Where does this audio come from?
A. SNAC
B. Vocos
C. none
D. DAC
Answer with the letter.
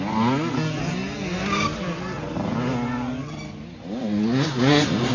C